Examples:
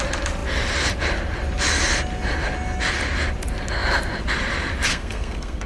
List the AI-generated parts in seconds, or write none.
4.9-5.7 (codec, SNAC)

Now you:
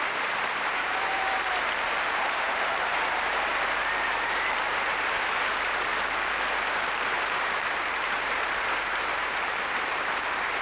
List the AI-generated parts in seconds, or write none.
0.0-1.6 (vocoder, BigVGAN v2); 2.2-5.9; 6.7-10.6

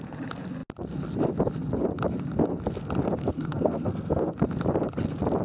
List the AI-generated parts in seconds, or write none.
3.2-4.3 (codec, SNAC)

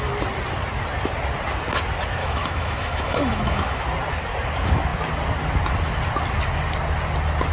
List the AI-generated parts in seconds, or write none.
2.2-3.8 (autoencoder, DAC-VAE)

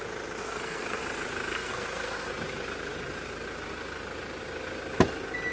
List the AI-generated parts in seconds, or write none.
0.4-1.0 (codec, SNAC); 1.5-2.3

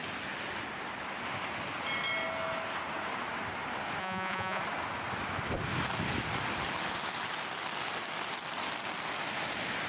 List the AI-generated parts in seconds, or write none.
4.0-4.6 (vocoder, Vocos)